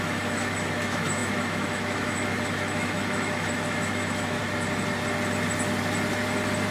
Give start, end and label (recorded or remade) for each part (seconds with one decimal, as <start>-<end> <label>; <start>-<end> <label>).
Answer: 0.0-4.4 remade; 4.4-6.7 recorded